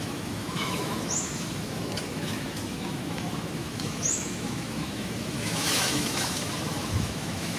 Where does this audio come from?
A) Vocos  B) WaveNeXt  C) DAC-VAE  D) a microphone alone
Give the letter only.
C